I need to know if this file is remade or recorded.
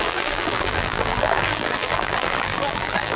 remade